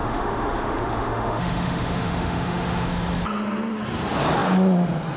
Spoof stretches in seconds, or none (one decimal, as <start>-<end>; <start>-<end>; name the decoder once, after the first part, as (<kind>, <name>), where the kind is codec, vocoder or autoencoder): 0.0-2.9 (autoencoder, DAC-VAE)